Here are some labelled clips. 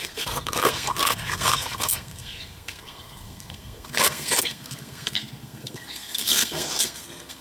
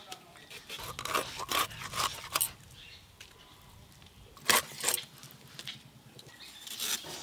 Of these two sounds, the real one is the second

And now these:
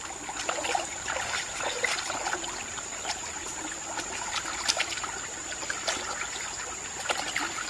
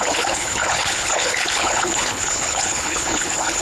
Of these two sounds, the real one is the first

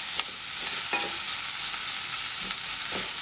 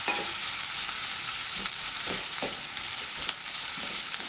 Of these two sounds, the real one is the first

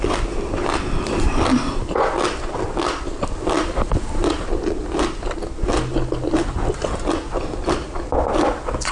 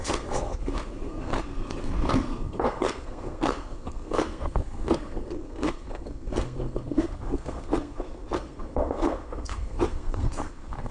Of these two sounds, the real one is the first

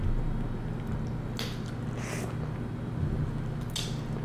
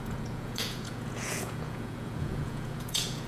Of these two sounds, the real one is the first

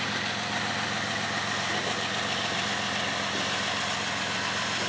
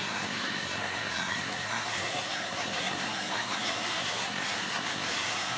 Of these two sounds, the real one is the first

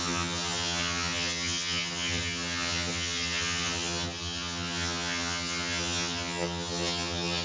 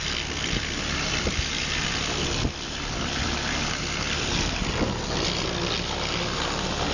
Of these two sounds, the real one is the second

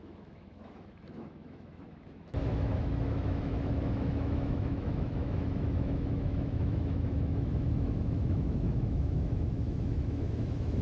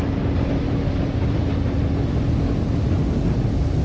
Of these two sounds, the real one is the second